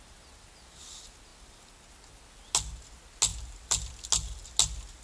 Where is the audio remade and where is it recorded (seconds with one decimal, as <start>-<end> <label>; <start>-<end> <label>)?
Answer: 0.0-3.3 recorded; 3.3-3.9 remade; 3.9-5.0 recorded